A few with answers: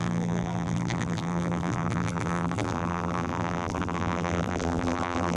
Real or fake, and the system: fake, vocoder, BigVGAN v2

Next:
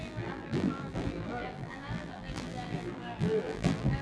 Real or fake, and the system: fake, vocoder, BigVGAN v2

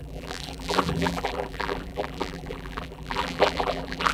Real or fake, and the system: fake, vocoder, BigVGAN v2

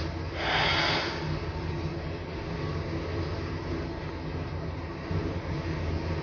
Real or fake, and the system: real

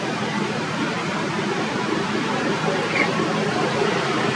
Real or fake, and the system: fake, vocoder, BigVGAN v2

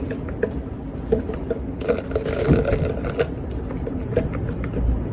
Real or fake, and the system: real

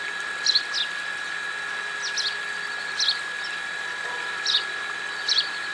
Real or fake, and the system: real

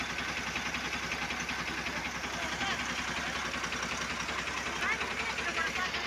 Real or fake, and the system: real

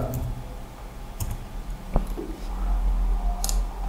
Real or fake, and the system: real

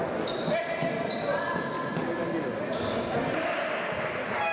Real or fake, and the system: real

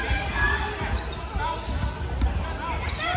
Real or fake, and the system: real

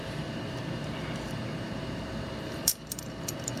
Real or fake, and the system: fake, vocoder, BigVGAN v2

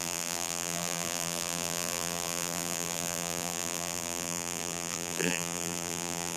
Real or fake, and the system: fake, vocoder, BigVGAN v2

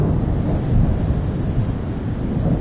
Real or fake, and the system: real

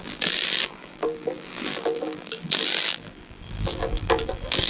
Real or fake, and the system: fake, vocoder, BigVGAN v2